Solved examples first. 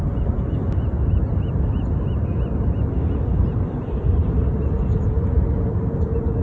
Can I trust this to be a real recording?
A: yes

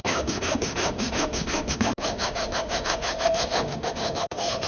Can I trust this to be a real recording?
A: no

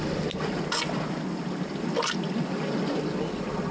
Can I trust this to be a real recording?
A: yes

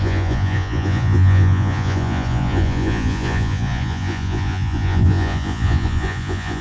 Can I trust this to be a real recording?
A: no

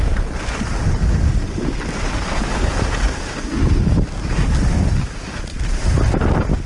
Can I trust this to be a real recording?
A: yes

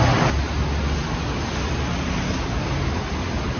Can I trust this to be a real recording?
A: yes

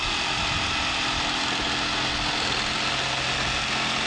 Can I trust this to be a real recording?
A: yes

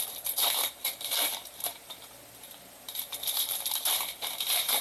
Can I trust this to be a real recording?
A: no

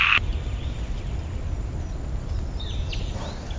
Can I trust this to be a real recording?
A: yes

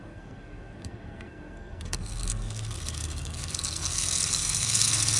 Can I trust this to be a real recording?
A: no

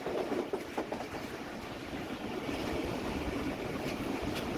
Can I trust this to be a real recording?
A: yes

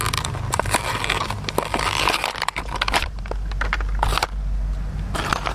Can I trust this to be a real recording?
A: yes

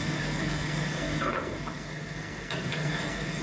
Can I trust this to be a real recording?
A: no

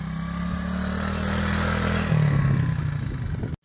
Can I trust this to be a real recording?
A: yes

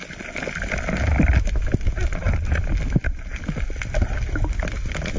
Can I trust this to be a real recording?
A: yes